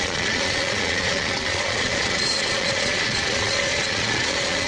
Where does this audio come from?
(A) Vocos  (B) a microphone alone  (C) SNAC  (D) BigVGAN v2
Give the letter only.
A